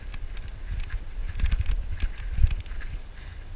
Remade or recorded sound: recorded